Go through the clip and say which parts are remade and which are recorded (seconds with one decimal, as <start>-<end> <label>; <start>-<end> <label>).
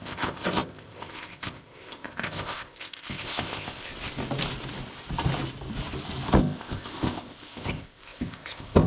0.0-3.9 remade; 3.9-6.4 recorded; 6.4-8.9 remade